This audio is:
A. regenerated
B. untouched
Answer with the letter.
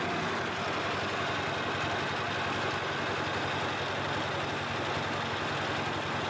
B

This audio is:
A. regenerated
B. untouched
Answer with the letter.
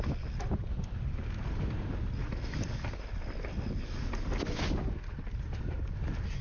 B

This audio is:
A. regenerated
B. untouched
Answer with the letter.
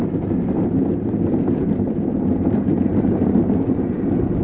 A